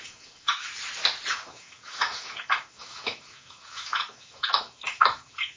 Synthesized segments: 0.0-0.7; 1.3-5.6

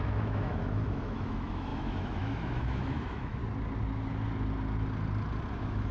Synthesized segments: 0.0-3.4; 5.5-5.9